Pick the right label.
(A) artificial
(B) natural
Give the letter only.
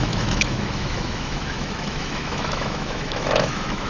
A